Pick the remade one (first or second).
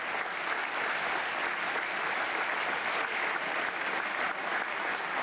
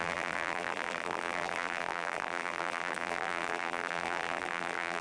second